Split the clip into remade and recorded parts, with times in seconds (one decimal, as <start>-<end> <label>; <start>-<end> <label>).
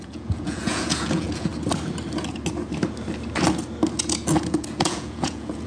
0.0-1.5 remade; 1.5-4.3 recorded; 4.3-5.7 remade